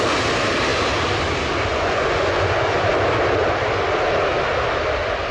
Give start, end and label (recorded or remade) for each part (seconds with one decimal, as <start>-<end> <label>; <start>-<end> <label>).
0.0-1.7 recorded; 1.7-2.9 remade; 2.9-5.3 recorded